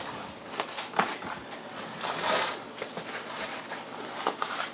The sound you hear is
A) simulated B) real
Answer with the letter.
A